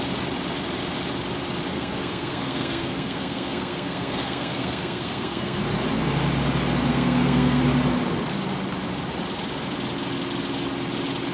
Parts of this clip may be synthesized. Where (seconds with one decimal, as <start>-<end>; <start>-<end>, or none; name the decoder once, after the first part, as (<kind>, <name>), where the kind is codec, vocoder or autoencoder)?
1.7-5.6 (codec, SNAC); 6.9-7.6

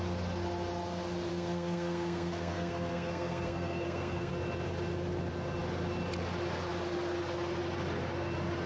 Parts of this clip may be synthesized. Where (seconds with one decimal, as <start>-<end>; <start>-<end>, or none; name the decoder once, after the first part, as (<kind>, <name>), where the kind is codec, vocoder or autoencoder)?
1.3-4.3 (codec, SNAC)

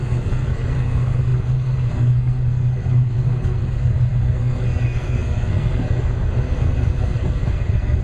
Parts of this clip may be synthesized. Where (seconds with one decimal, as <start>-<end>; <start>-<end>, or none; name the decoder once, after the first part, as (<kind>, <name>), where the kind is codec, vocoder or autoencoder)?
0.0-8.0 (codec, SNAC)

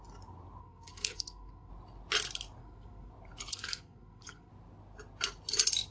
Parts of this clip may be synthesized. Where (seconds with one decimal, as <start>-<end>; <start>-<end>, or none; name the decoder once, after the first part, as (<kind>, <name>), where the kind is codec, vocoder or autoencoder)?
0.6-1.7 (codec, SNAC); 2.6-3.1; 3.5-4.5

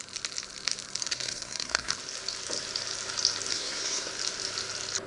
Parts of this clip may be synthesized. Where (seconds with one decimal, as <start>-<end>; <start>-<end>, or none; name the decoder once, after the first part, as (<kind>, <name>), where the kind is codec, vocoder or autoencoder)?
1.0-1.9 (codec, SNAC); 3.5-4.1

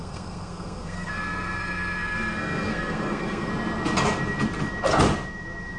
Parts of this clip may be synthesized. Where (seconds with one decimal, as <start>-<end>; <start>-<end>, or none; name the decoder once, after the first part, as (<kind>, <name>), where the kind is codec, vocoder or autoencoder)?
0.0-3.5 (codec, SNAC)

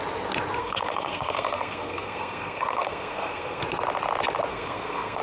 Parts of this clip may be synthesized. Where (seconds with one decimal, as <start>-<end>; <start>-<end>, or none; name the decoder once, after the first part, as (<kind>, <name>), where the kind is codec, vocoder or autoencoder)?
0.6-3.6 (codec, SNAC); 4.5-5.2

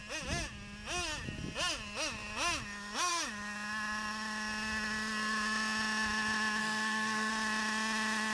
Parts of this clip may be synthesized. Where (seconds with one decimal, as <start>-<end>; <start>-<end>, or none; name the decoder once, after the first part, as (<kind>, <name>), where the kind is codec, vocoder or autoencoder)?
6.6-7.3 (codec, SNAC)